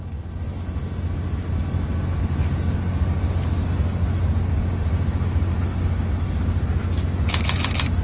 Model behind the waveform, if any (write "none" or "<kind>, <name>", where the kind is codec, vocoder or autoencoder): none